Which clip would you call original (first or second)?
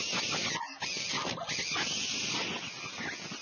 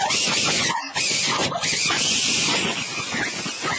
first